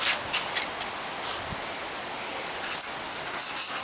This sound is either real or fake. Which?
real